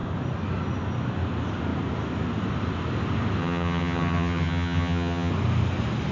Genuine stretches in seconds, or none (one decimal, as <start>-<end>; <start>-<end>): 0.0-3.4; 5.3-6.1